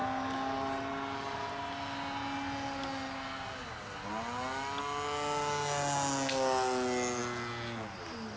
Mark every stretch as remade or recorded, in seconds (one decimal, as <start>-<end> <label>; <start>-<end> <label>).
0.0-8.4 recorded